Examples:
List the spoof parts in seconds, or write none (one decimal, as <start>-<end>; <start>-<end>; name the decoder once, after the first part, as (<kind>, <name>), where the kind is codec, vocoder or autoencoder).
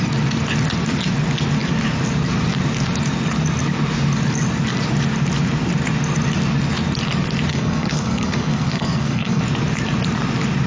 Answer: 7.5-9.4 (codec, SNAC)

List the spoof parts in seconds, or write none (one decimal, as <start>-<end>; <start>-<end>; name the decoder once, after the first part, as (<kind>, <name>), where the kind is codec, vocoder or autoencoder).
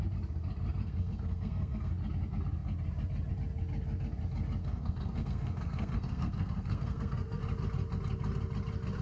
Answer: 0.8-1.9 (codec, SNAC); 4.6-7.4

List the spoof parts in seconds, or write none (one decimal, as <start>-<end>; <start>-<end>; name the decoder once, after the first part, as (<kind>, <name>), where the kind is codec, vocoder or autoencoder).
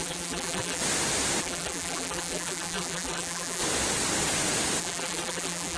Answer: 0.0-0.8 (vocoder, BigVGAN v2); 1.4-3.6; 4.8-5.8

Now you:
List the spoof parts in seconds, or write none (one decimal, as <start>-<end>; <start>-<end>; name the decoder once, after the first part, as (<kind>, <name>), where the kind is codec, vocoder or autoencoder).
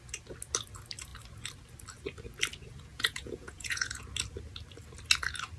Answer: 2.9-4.0 (vocoder, Vocos)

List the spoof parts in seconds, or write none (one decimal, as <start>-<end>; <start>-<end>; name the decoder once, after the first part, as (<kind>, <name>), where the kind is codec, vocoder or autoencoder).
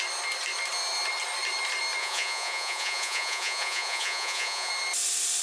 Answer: 2.0-4.7 (vocoder, Vocos)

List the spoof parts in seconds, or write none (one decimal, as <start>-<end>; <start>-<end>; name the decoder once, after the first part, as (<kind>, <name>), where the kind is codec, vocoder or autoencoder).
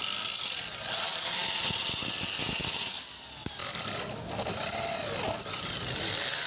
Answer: none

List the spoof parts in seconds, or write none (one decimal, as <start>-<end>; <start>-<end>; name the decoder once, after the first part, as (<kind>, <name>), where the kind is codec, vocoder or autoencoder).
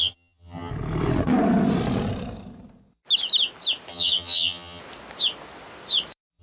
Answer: 0.0-0.7 (vocoder, HiFi-GAN); 3.9-4.8